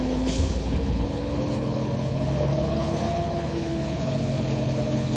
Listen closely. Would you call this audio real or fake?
fake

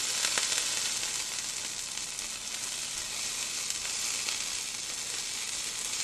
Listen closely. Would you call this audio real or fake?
real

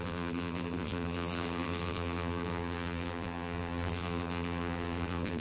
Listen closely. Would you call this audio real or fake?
fake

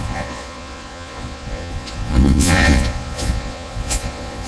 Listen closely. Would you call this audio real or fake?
fake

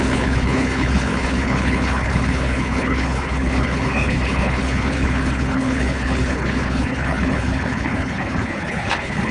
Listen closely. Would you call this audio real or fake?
fake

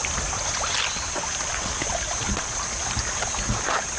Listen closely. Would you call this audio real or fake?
real